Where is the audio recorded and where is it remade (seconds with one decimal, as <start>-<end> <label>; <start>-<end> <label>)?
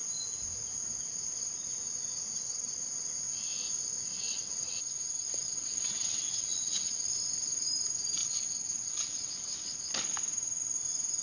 0.0-4.1 recorded; 4.1-4.8 remade; 4.8-5.2 recorded; 5.2-7.3 remade; 7.3-8.2 recorded; 8.2-9.3 remade; 9.3-11.2 recorded